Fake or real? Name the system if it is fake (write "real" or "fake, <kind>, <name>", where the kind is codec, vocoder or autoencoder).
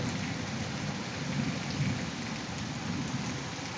real